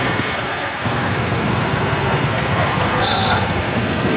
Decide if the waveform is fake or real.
fake